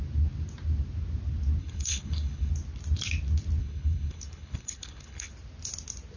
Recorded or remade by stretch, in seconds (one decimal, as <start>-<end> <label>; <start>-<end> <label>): 0.0-1.6 recorded; 1.6-2.5 remade; 2.5-3.6 recorded; 3.6-5.3 remade; 5.3-6.2 recorded